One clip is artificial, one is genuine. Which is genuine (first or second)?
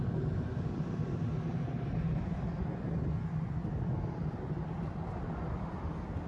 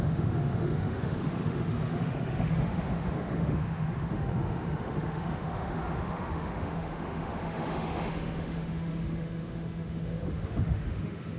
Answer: first